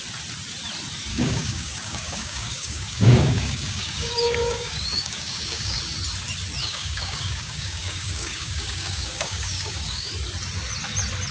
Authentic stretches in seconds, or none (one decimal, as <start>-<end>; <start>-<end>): 0.0-1.1; 5.8-6.6; 10.1-11.3